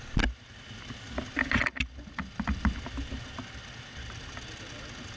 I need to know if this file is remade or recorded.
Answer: recorded